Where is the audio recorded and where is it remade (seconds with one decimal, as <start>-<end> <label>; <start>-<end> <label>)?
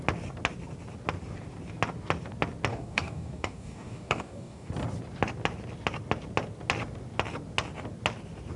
0.0-2.7 recorded; 2.7-4.7 remade; 4.7-8.6 recorded